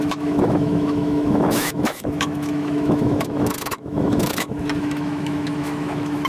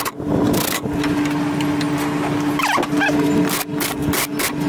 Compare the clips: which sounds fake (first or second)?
first